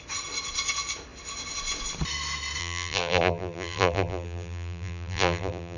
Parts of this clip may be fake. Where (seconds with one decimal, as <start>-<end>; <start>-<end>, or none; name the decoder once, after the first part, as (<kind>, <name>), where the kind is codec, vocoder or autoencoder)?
2.6-5.8 (vocoder, BigVGAN v2)